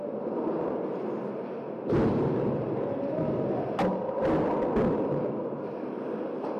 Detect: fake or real real